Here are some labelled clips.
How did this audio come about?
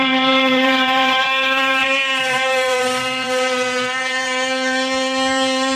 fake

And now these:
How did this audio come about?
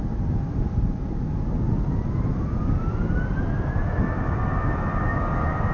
real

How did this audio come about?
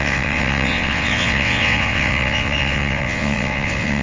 fake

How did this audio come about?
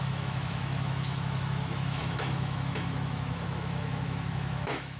fake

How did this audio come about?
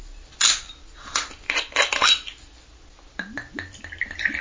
real